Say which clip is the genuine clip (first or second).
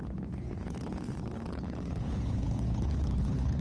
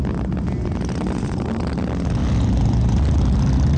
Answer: second